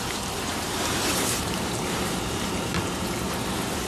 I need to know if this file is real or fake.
fake